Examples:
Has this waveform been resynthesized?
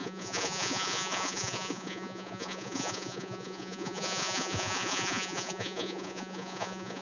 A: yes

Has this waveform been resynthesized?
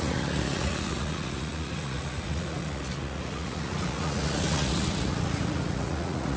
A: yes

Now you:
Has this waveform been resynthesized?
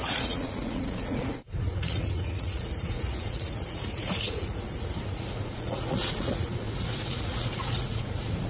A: yes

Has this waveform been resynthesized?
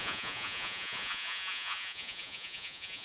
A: yes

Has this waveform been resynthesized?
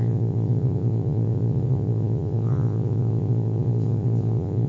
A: yes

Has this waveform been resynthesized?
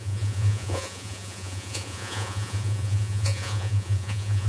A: yes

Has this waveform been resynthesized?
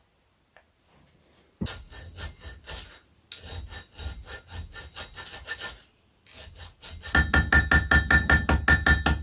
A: no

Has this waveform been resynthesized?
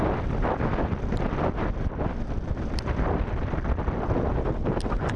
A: no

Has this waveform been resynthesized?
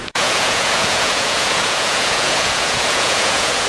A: yes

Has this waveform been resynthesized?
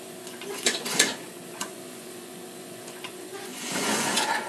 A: yes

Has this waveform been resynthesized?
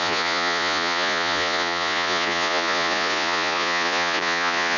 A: yes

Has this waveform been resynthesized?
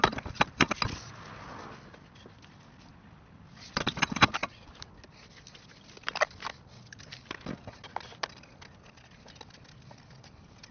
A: no